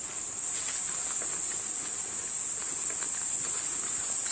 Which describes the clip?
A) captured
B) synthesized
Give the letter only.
A